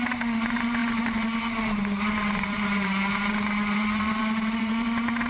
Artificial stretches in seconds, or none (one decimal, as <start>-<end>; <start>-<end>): 0.0-5.3